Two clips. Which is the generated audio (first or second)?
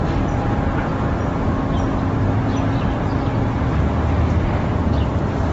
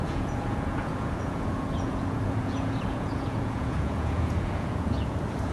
second